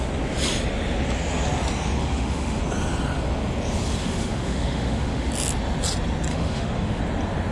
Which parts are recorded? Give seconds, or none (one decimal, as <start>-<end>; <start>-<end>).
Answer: 0.0-2.0; 2.6-4.0; 5.3-6.3; 7.0-7.5